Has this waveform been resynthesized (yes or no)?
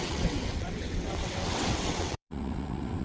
yes